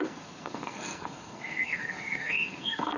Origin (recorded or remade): remade